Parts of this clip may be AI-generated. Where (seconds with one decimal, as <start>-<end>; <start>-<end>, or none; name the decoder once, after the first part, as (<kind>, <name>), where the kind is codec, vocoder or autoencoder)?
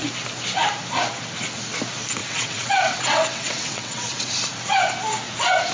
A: 2.2-4.3 (vocoder, WaveNeXt)